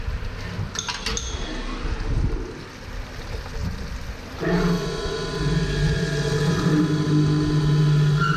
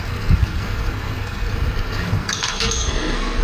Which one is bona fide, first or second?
first